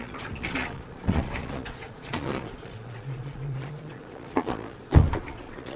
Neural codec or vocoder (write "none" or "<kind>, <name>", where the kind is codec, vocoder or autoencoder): vocoder, Vocos